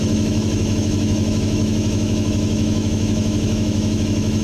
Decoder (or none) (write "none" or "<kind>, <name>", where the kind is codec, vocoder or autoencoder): autoencoder, DAC-VAE